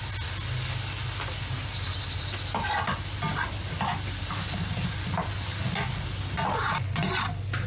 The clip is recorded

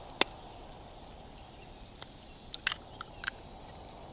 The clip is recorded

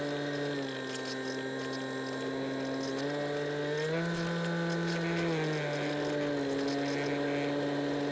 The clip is recorded